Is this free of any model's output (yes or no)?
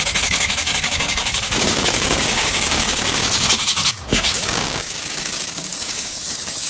no